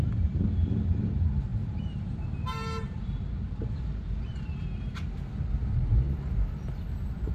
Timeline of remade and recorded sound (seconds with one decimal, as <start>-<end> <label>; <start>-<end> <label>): 0.0-1.5 recorded; 1.5-5.1 remade; 5.1-7.3 recorded